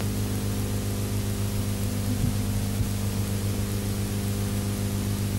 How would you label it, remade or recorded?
recorded